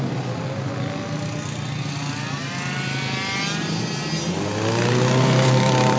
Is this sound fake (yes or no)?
no